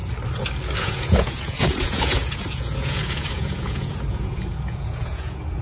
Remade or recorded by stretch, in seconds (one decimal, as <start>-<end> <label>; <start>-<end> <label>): 0.0-0.8 recorded; 0.8-5.6 remade